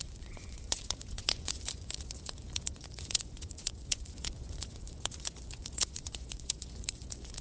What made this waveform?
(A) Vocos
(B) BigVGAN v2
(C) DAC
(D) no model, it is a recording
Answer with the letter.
A